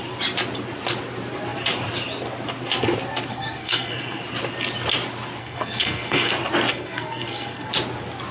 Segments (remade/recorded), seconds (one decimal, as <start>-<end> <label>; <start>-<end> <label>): 0.0-3.3 recorded; 3.3-4.2 remade; 4.2-5.4 recorded; 5.4-6.3 remade; 6.3-6.7 recorded; 6.7-7.7 remade; 7.7-8.3 recorded